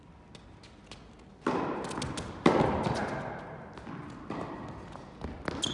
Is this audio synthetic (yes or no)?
no